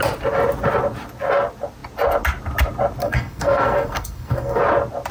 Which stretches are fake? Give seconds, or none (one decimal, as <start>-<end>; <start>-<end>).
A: 3.0-4.6